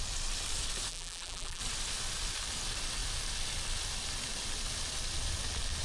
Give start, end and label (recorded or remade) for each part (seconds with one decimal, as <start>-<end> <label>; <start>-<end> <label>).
0.0-0.9 recorded; 0.9-1.6 remade; 1.6-5.8 recorded